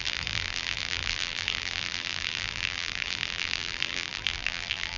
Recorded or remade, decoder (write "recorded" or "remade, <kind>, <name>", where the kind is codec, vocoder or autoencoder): remade, vocoder, BigVGAN v2